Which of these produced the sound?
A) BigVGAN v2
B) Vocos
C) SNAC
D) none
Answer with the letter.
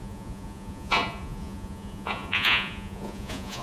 B